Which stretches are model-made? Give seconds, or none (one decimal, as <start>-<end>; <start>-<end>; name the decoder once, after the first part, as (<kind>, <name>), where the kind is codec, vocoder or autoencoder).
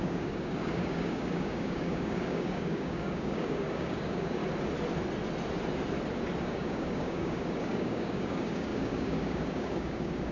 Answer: 0.0-4.4 (codec, DAC); 6.4-10.3